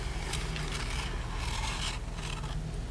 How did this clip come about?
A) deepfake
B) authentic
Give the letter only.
B